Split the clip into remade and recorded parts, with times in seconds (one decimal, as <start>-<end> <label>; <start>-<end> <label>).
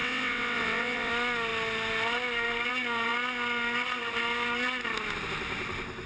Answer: 0.0-1.1 remade; 1.1-6.1 recorded